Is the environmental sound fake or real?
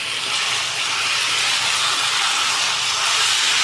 real